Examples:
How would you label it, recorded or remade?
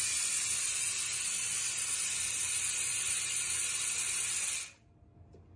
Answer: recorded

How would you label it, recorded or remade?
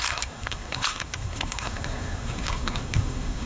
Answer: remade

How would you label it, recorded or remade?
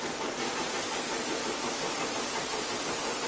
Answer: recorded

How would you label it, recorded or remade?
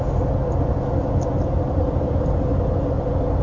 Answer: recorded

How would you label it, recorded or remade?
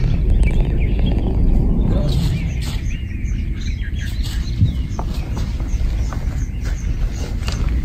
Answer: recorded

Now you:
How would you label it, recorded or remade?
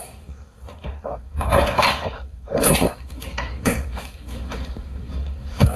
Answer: remade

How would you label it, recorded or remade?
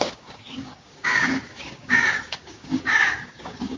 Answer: remade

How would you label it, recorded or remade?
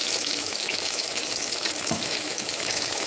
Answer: remade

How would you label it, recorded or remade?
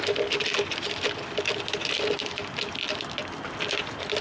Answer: recorded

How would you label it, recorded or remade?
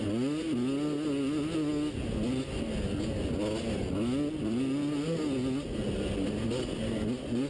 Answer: recorded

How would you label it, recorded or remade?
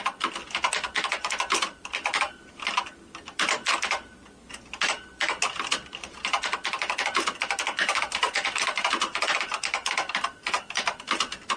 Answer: recorded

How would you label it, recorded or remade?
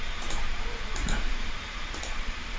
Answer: remade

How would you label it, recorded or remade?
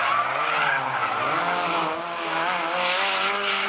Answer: recorded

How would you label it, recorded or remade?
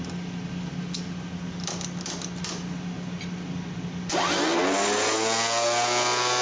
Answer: recorded